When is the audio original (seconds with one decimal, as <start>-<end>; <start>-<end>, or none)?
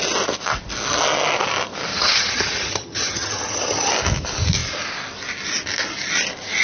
0.0-1.9; 3.9-6.6